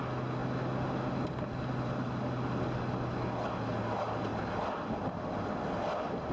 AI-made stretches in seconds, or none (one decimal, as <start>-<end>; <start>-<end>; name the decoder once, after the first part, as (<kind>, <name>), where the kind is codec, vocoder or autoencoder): none